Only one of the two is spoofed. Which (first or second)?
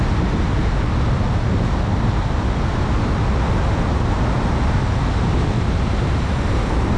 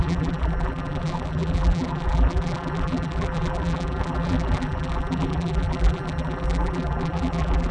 second